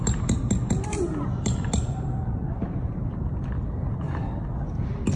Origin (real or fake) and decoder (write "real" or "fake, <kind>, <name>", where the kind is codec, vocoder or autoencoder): real